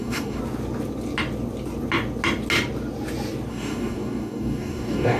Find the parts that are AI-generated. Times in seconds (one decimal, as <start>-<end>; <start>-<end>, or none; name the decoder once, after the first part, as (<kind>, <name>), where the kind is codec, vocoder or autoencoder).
0.0-0.4 (codec, DAC); 3.5-5.2